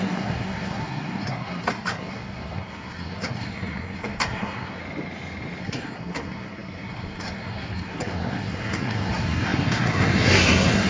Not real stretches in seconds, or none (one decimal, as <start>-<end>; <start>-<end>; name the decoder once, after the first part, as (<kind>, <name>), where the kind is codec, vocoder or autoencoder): 0.0-4.8 (codec, SNAC); 5.6-10.9